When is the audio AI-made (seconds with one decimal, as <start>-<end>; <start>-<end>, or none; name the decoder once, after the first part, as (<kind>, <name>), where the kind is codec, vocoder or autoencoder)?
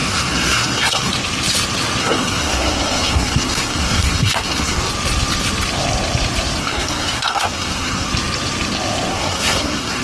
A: 0.0-1.1 (codec, SNAC); 2.0-4.9; 6.6-8.1; 9.1-10.0